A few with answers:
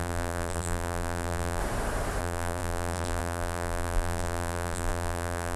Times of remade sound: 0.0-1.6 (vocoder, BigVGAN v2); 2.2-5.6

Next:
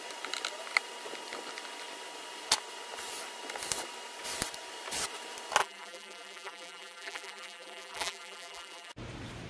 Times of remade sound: 5.6-8.9 (vocoder, BigVGAN v2)

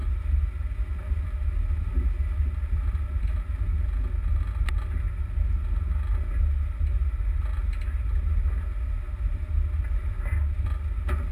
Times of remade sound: none

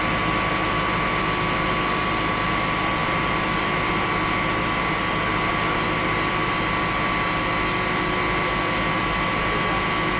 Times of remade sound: 3.0-3.9 (vocoder, BigVGAN v2)